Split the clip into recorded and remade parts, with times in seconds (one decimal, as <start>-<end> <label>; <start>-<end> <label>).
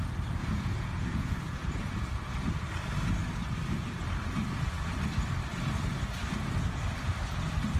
0.0-0.4 recorded; 0.4-2.5 remade; 2.5-7.8 recorded